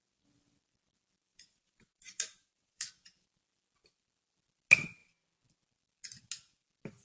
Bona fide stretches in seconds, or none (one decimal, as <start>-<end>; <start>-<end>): 0.0-1.3; 2.9-7.0